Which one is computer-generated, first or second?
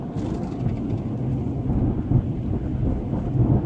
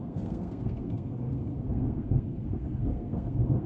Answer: second